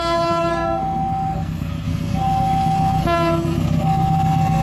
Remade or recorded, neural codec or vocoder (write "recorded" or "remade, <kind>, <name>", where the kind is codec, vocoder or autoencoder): remade, codec, SNAC